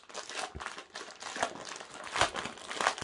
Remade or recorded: recorded